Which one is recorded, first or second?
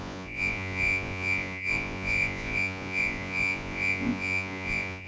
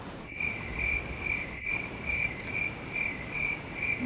second